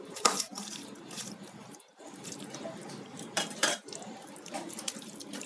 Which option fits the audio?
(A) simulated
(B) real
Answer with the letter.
A